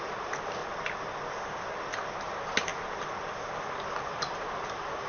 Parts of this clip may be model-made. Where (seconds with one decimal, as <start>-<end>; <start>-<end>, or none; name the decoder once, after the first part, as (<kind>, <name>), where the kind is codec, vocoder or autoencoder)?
0.0-0.6 (vocoder, BigVGAN v2); 2.2-2.7; 4.1-5.1

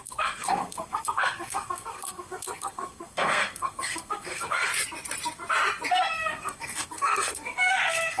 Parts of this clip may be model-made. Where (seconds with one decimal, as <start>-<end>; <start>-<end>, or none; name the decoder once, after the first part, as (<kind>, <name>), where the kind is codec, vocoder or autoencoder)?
0.0-4.7 (codec, SNAC); 5.9-8.2

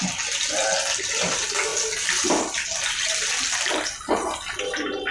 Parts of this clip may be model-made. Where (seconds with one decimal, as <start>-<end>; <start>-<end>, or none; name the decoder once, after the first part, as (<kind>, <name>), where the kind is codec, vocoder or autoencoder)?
none

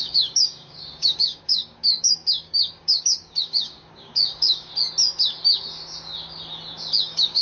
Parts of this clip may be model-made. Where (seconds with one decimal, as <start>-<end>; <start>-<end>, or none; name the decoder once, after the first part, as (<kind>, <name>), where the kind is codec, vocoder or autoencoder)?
0.0-4.7 (codec, DAC); 7.0-7.4

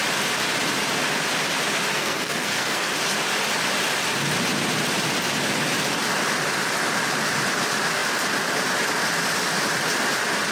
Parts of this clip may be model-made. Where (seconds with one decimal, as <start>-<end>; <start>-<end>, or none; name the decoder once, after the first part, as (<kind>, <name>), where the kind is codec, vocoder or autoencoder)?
1.9-2.9 (codec, SNAC)

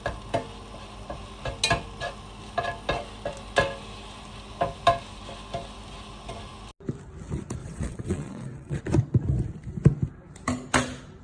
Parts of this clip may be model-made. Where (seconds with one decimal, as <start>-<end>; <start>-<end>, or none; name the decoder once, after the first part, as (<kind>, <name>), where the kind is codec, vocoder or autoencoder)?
7.6-8.8 (vocoder, WaveNeXt)

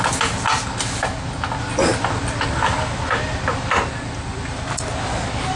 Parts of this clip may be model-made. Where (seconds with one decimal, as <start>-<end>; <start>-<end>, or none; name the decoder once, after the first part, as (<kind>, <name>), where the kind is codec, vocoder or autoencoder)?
none